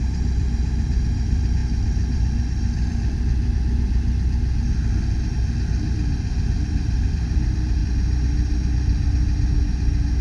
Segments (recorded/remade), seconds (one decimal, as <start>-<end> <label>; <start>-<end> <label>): 0.0-7.8 remade; 7.8-10.2 recorded